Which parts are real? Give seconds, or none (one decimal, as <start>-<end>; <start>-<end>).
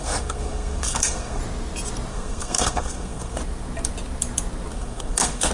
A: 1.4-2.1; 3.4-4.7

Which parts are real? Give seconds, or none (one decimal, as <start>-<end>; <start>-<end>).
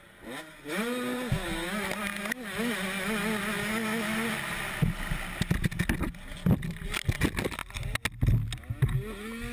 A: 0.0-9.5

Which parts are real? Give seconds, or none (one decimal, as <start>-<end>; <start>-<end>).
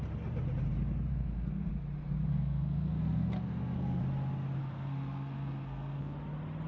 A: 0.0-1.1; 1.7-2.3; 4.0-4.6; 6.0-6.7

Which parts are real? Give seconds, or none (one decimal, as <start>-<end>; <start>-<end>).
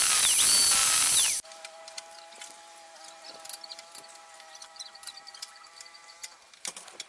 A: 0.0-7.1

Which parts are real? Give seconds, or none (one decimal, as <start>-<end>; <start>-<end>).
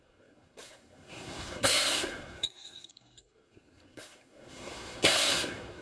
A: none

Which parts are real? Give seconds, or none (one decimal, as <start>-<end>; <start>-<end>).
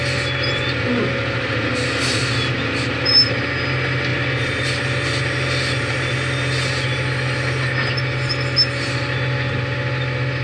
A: 0.0-10.4